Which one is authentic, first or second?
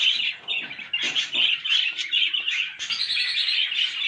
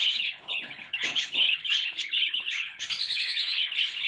first